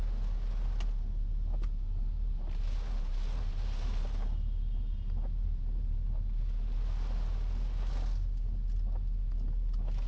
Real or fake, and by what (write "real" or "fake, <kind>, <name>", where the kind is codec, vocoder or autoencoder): real